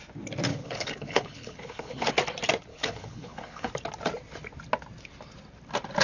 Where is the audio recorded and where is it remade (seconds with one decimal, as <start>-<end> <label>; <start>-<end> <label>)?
0.0-0.5 recorded; 0.5-2.1 remade; 2.1-2.7 recorded; 2.7-3.7 remade; 3.7-6.0 recorded